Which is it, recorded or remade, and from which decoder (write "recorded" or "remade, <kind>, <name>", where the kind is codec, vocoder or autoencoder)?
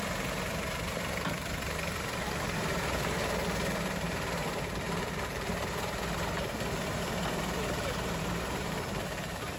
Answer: remade, vocoder, BigVGAN v2